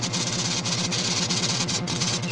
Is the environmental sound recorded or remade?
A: remade